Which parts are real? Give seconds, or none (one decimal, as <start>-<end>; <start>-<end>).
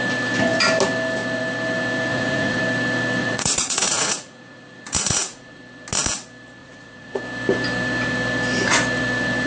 0.0-2.1; 2.6-3.2; 5.6-6.6; 7.2-9.5